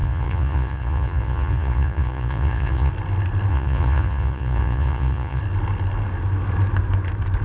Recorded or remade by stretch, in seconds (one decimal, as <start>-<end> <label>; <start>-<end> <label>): 0.0-2.9 remade; 2.9-3.5 recorded; 3.5-5.4 remade; 5.4-7.4 recorded